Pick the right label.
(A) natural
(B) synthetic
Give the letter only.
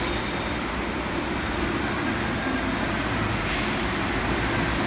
A